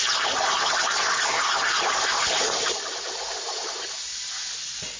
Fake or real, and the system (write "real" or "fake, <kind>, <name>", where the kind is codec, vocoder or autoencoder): real